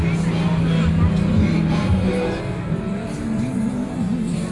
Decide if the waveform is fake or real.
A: real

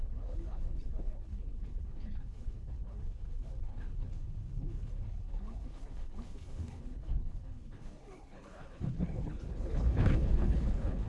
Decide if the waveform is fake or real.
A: fake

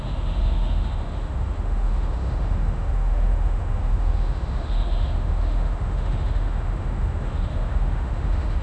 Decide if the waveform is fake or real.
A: fake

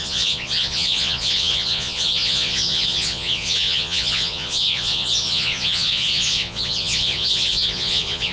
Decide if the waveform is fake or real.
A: fake